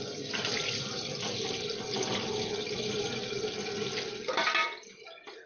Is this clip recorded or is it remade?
recorded